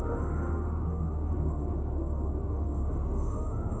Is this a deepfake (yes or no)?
yes